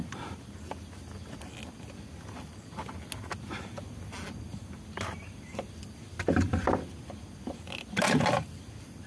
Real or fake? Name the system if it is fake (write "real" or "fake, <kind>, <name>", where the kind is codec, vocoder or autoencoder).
real